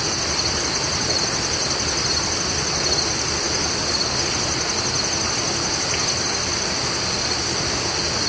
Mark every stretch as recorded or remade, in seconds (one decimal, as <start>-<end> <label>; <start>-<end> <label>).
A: 0.0-8.3 recorded